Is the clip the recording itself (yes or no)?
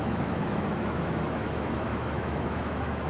no